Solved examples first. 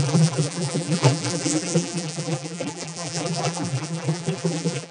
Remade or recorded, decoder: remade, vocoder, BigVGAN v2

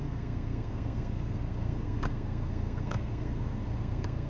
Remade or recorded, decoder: remade, codec, SNAC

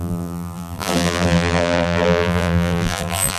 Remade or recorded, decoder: remade, vocoder, BigVGAN v2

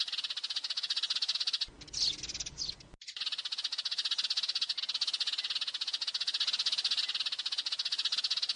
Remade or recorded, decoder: recorded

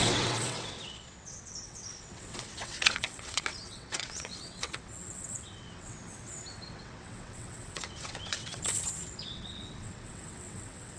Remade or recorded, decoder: remade, vocoder, WaveNeXt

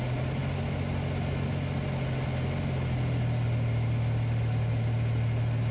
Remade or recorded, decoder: recorded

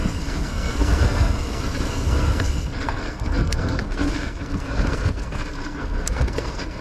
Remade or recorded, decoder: remade, codec, SNAC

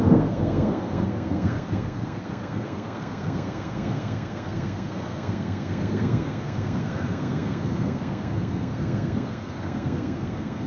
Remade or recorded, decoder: remade, codec, SNAC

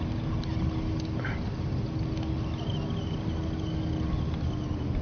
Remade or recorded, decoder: recorded